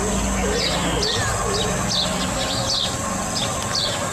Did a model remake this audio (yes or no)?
no